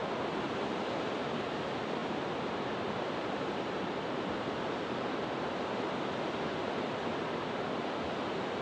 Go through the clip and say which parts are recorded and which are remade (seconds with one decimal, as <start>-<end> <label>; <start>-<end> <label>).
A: 0.0-2.0 recorded; 2.0-5.4 remade; 5.4-8.6 recorded